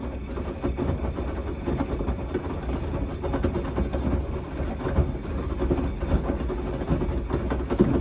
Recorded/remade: recorded